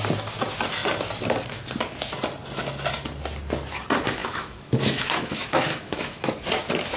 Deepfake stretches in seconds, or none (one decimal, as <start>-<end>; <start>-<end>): 4.2-6.3

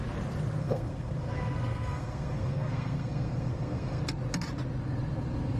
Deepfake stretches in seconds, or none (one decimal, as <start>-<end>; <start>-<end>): 0.6-4.0

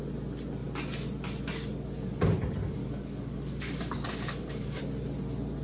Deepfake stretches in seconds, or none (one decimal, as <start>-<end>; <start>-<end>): 2.8-4.8

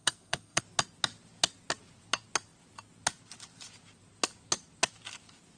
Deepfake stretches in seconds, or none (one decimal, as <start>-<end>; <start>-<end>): 0.0-0.6